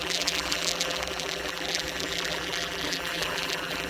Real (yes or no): no